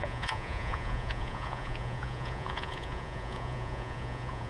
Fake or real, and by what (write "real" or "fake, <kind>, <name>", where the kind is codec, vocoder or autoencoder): fake, vocoder, Vocos